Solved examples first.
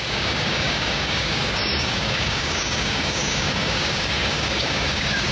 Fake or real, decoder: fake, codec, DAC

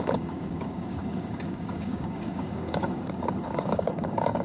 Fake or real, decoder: fake, codec, DAC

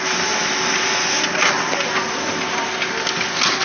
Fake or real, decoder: real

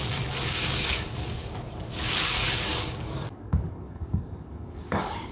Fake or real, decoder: fake, codec, DAC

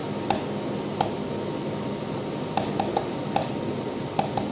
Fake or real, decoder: real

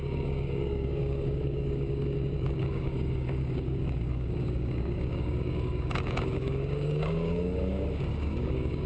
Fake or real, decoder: fake, codec, DAC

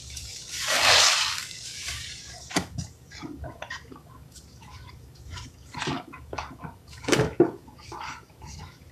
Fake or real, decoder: fake, codec, DAC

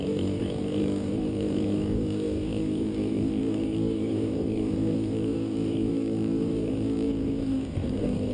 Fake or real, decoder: fake, codec, DAC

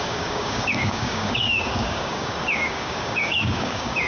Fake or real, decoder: fake, codec, DAC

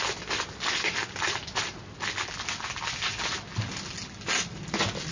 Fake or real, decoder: real